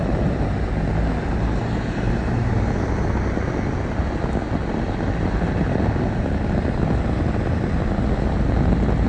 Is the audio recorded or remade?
recorded